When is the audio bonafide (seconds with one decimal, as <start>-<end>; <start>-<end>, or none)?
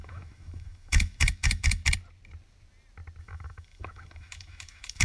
1.8-3.2